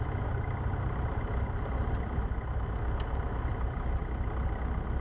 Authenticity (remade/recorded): recorded